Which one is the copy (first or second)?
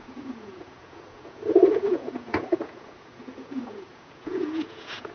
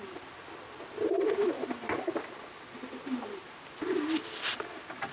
first